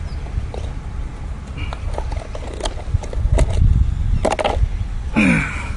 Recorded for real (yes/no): yes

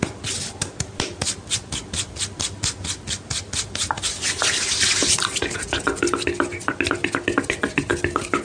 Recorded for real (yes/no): yes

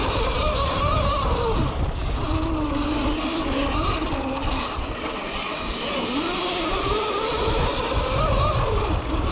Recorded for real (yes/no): yes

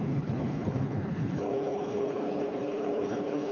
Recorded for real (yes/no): no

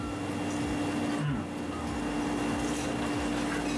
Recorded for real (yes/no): yes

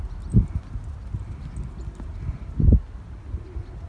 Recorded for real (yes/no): yes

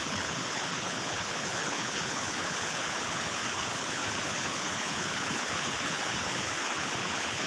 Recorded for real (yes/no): no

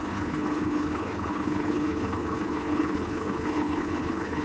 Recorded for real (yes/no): no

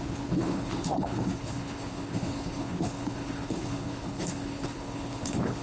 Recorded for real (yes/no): no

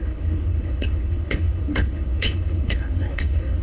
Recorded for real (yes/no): no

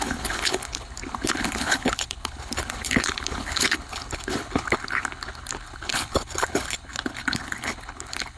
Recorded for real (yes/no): no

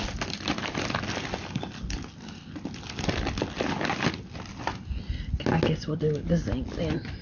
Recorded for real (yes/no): yes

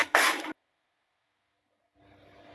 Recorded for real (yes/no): yes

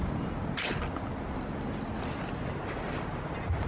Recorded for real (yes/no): yes